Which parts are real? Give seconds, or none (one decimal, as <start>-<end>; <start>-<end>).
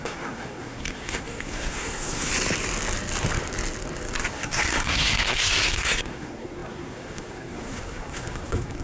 2.3-4.3